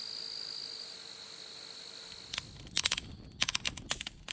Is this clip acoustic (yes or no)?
yes